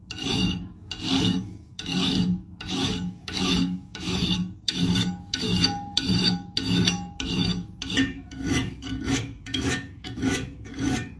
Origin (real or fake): fake